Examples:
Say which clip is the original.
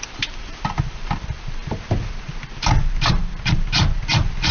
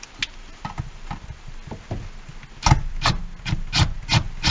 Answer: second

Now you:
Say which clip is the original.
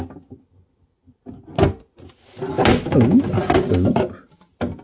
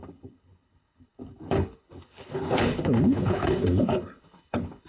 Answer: first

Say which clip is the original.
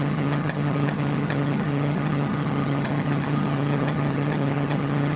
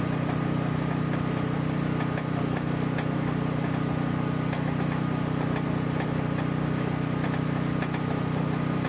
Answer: second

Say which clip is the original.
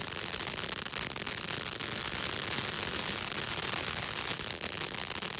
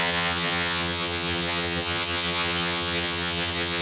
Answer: first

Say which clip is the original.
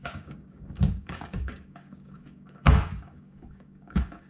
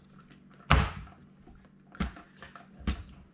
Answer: second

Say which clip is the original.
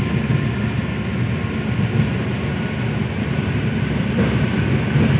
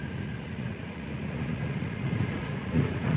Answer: first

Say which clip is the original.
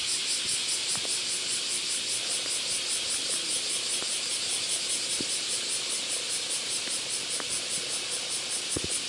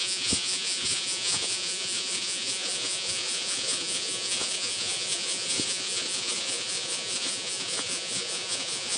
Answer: first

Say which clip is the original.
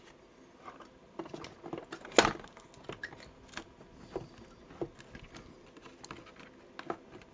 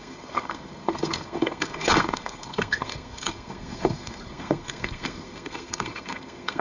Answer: first